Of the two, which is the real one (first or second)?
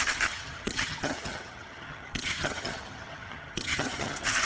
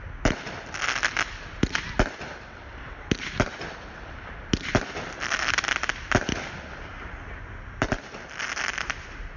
second